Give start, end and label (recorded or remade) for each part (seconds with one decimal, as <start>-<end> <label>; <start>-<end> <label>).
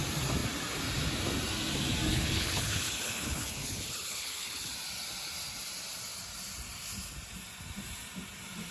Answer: 0.0-2.1 recorded; 2.1-4.7 remade; 4.7-8.7 recorded